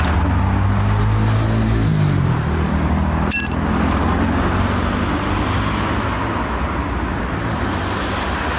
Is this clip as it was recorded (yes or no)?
yes